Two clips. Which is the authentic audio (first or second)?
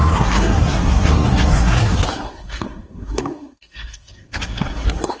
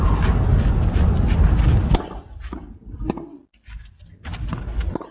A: second